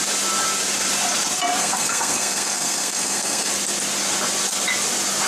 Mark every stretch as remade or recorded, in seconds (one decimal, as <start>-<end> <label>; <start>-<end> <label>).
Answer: 0.0-1.6 recorded; 1.6-3.5 remade; 3.5-5.3 recorded